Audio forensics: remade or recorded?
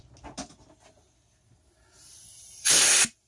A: recorded